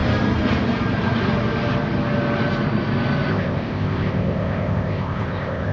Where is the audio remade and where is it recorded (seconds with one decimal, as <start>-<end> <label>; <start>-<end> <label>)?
0.0-3.3 recorded; 3.3-5.7 remade